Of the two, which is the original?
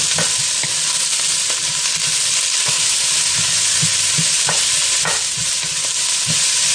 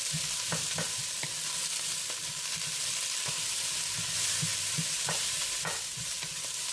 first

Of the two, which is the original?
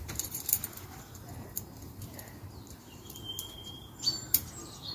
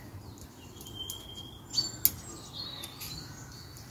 second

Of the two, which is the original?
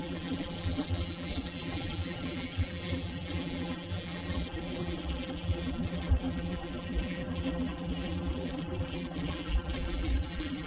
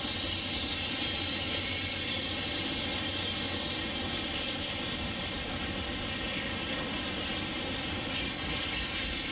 second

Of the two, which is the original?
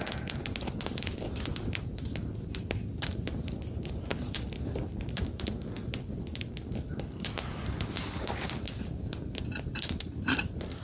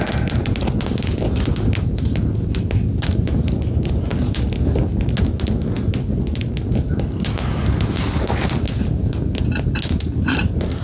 second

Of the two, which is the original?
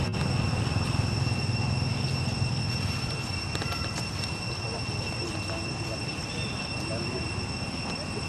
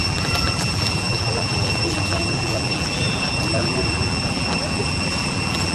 first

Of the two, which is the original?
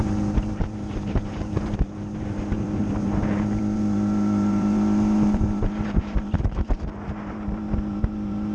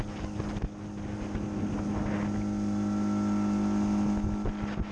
second